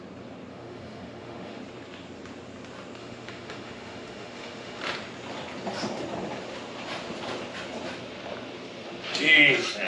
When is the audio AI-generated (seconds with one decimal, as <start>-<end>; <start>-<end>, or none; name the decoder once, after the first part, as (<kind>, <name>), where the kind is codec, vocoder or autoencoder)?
0.5-1.6 (autoencoder, DAC-VAE); 3.0-4.8